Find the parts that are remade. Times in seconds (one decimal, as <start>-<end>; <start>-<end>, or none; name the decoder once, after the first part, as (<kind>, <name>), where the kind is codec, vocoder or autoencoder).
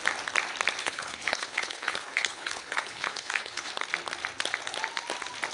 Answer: 0.8-3.7 (codec, HILCodec)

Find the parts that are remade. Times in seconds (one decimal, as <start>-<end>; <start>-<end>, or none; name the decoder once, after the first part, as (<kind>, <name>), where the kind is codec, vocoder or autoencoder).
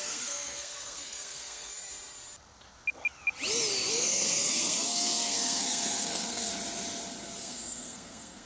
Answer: 0.0-1.7 (codec, SNAC); 3.9-6.5; 7.4-8.5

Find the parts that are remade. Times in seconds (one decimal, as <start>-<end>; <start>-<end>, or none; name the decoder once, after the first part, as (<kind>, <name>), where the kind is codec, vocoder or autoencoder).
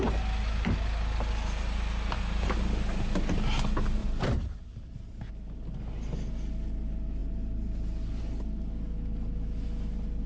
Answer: 4.0-5.3 (vocoder, BigVGAN v2)